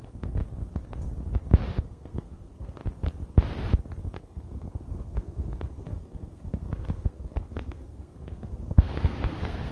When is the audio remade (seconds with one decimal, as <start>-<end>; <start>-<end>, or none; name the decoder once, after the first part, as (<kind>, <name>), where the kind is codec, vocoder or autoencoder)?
0.0-0.4 (codec, SNAC); 1.8-2.8; 4.2-9.7